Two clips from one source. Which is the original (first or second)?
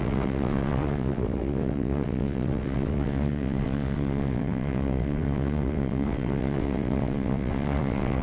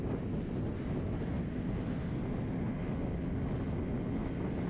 second